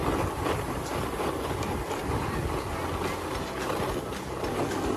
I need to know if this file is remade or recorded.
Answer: recorded